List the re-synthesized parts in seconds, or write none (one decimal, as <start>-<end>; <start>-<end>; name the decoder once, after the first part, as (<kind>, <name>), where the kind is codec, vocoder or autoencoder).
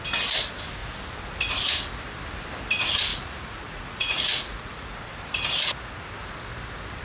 3.1-5.0 (vocoder, Vocos)